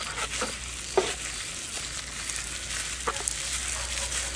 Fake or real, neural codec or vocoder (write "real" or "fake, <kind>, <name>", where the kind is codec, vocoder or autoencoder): real